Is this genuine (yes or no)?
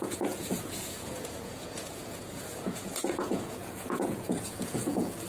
no